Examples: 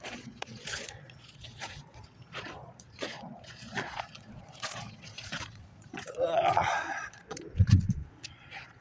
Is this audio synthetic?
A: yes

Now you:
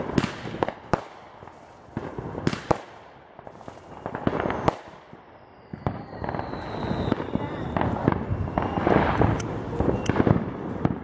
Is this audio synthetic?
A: no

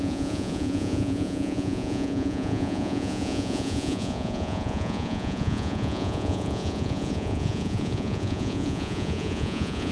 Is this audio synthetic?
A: yes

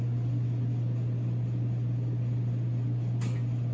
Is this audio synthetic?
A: no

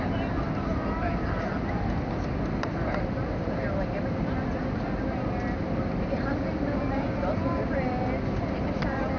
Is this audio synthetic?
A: no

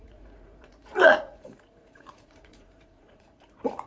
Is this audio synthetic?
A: yes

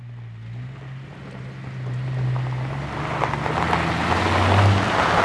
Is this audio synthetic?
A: no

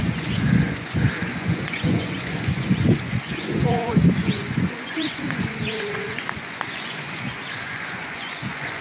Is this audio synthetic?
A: yes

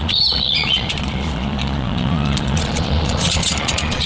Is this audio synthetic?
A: yes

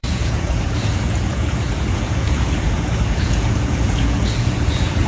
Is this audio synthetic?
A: yes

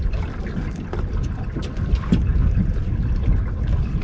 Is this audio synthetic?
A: no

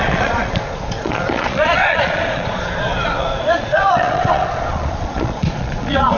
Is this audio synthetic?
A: yes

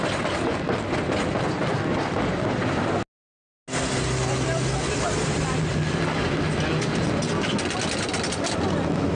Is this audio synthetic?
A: no